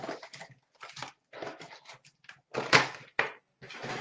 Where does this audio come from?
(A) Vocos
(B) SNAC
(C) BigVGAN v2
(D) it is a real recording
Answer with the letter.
D